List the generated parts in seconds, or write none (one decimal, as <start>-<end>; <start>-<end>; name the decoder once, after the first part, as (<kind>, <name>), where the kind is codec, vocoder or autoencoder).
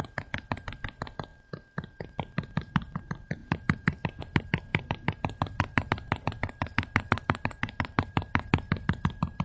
0.0-9.4 (vocoder, BigVGAN v2)